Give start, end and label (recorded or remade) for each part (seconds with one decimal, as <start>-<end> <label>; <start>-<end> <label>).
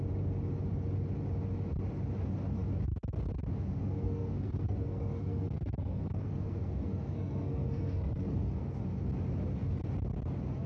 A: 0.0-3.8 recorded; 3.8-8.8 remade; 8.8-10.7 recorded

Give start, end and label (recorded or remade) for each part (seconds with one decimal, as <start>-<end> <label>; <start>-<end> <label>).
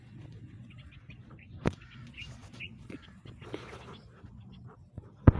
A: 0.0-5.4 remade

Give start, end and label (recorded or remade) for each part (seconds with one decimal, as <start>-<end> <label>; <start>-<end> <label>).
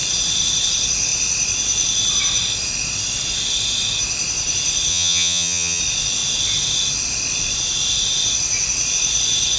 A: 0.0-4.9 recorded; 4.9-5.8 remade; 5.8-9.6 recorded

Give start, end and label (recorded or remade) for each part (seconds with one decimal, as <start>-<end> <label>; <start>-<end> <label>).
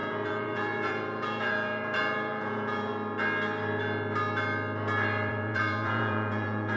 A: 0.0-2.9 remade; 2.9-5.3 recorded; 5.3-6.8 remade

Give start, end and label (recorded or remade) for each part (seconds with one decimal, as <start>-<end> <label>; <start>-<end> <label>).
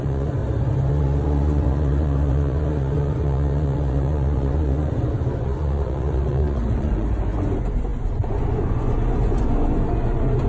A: 0.0-0.4 remade; 0.4-0.9 recorded; 0.9-10.5 remade